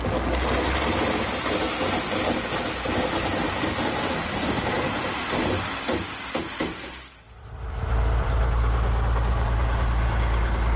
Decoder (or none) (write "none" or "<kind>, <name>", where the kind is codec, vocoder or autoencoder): none